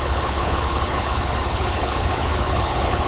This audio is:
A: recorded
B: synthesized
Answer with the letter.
B